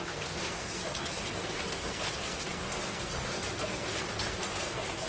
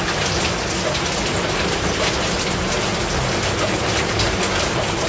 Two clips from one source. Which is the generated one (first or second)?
first